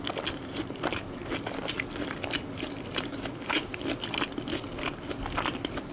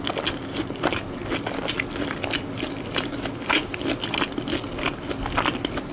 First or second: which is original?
second